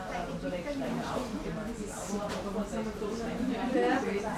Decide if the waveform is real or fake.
fake